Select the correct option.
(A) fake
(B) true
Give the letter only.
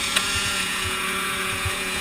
A